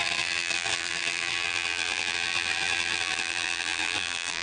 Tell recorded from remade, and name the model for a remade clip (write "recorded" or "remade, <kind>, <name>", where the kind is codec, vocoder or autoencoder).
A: remade, vocoder, BigVGAN v2